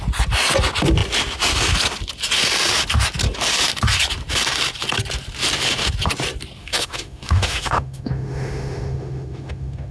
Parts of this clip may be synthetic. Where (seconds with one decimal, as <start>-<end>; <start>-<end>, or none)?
6.6-9.9